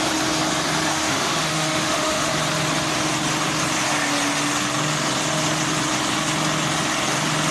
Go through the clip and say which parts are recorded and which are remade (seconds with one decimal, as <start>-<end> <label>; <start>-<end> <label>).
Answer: 0.0-0.9 recorded; 0.9-2.3 remade; 2.3-7.5 recorded